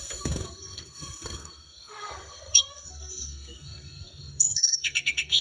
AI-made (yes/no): yes